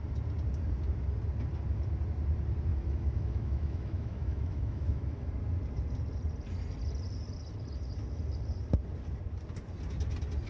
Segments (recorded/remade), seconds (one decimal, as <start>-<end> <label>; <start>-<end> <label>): 0.0-2.7 recorded; 2.7-5.3 remade; 5.3-10.5 recorded

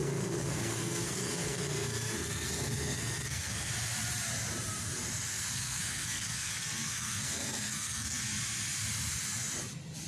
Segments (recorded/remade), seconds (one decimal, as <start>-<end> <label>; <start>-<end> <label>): 0.0-3.7 remade; 3.7-5.3 recorded; 5.3-8.2 remade; 8.2-10.1 recorded

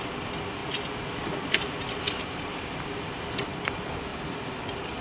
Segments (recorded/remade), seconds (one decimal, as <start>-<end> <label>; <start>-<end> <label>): 0.0-4.1 recorded; 4.1-5.0 remade

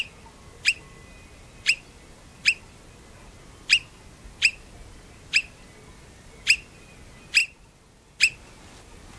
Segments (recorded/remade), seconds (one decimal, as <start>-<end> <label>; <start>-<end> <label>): 0.0-9.2 recorded